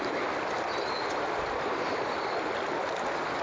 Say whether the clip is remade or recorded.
recorded